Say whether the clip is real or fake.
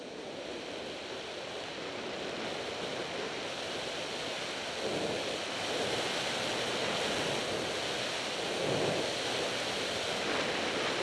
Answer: real